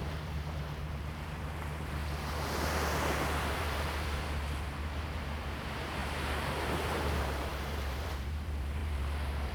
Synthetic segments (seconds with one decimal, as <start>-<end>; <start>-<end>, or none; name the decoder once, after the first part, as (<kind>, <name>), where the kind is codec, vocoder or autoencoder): 0.0-2.0 (vocoder, BigVGAN v2); 3.1-9.5